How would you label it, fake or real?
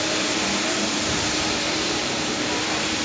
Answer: fake